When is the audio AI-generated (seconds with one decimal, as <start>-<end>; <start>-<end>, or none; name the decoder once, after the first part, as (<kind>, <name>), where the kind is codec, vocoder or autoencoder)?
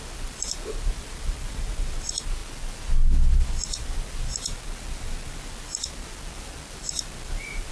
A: none